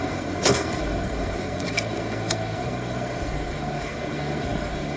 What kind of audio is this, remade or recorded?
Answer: remade